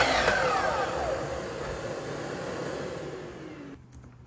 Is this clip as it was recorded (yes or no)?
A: yes